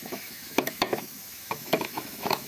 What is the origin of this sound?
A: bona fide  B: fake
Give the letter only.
B